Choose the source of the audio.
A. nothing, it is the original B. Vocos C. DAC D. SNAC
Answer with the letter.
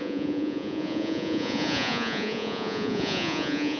B